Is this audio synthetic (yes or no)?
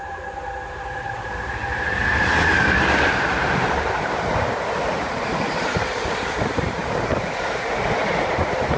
yes